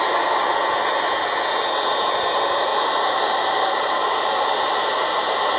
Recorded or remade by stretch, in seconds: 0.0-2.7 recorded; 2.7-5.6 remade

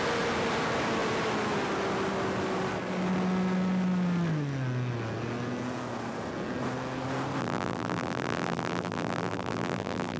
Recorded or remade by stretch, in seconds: 0.0-7.4 recorded; 7.4-10.2 remade

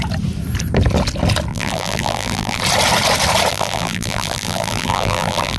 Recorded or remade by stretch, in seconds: 0.0-1.5 recorded; 1.5-2.6 remade; 2.6-3.5 recorded; 3.5-5.6 remade

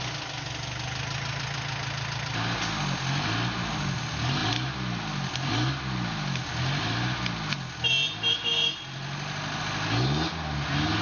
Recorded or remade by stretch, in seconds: 0.0-11.0 recorded

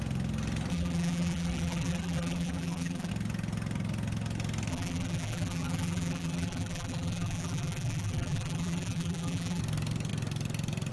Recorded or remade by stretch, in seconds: 0.0-0.7 recorded; 0.7-3.1 remade; 3.1-4.7 recorded; 4.7-9.6 remade; 9.6-10.9 recorded

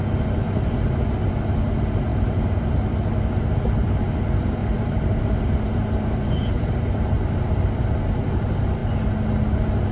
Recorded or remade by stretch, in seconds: 0.0-2.1 recorded; 2.1-2.9 remade; 2.9-4.6 recorded; 4.6-7.2 remade; 7.2-9.9 recorded